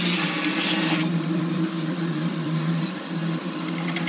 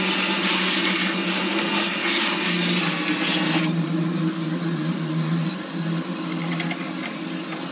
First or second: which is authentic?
second